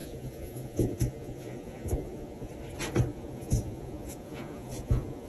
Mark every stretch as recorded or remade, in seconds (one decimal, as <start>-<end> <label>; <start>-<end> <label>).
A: 0.0-2.5 remade; 2.5-3.1 recorded; 3.1-5.3 remade